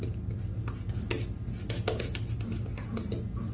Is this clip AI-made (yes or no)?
no